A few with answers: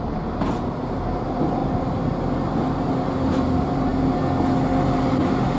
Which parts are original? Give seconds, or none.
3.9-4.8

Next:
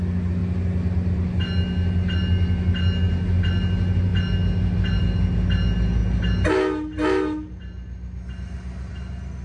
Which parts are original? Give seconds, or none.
0.0-9.4

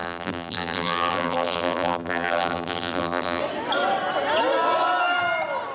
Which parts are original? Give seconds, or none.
3.4-5.7

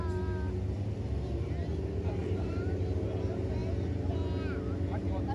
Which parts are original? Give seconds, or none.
0.0-2.2; 2.8-5.3

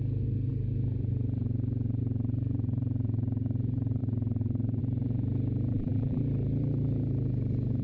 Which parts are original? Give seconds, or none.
0.0-5.7; 6.2-7.8

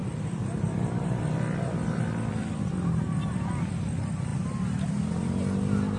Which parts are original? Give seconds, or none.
2.3-6.0

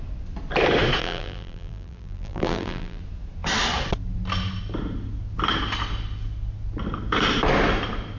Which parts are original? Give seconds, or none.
0.0-1.0; 3.0-8.2